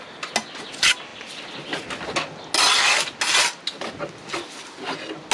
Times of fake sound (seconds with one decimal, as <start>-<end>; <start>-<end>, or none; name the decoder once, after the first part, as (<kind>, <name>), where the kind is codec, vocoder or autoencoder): none